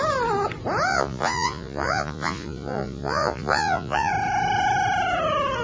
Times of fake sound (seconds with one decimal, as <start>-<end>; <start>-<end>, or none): 0.9-4.1